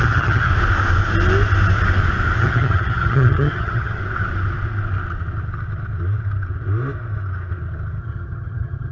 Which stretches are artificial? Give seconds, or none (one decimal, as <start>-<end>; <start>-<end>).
0.0-0.5; 2.4-4.0; 8.0-8.9